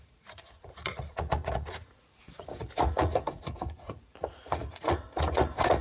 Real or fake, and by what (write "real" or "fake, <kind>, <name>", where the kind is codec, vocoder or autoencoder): fake, vocoder, Vocos